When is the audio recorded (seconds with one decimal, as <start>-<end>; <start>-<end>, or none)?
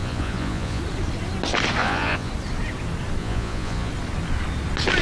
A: 0.8-1.8; 2.3-3.2; 3.9-5.0